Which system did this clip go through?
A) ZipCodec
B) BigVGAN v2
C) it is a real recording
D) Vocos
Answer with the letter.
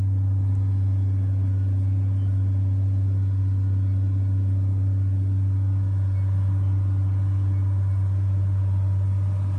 C